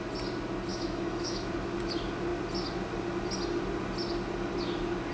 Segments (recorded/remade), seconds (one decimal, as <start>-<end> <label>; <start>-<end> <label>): 0.0-0.7 recorded; 0.7-1.5 remade; 1.5-5.1 recorded